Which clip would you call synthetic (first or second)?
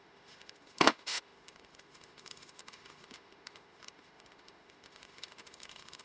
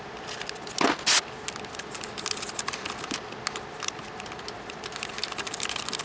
first